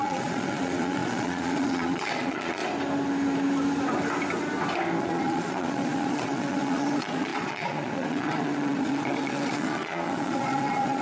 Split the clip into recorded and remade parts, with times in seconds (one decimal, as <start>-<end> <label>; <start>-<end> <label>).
0.0-2.6 remade; 2.6-5.0 recorded; 5.0-11.0 remade